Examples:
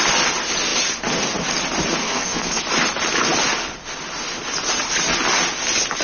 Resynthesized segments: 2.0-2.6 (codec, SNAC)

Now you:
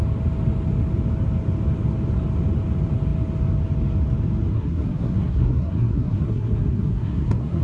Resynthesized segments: 4.5-7.6 (codec, SNAC)

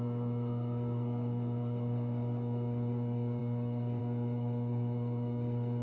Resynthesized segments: 0.0-5.8 (codec, SNAC)

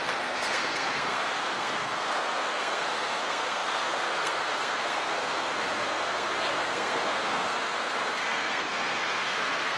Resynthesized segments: 0.0-9.8 (codec, SNAC)

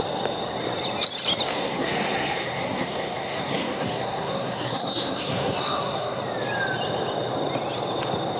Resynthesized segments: 1.5-6.2 (codec, SNAC)

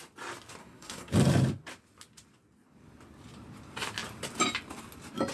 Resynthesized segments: 0.6-1.1 (codec, SNAC)